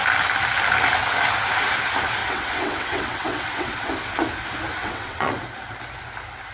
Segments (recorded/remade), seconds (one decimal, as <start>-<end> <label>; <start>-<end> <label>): 0.0-2.2 recorded; 2.2-3.9 remade; 3.9-4.8 recorded; 4.8-5.4 remade; 5.4-6.5 recorded